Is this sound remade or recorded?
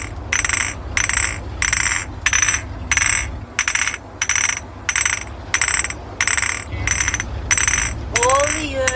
recorded